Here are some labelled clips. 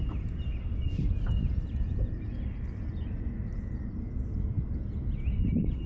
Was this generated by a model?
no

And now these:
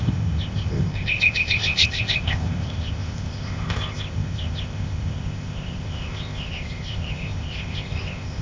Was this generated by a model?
yes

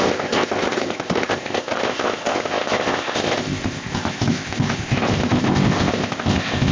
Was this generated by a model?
yes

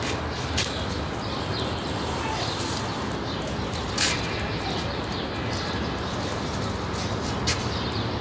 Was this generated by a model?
no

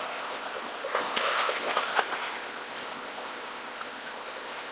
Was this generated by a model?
yes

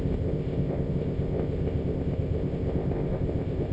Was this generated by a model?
yes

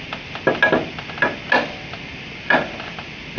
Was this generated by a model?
no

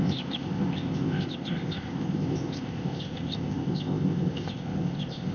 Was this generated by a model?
yes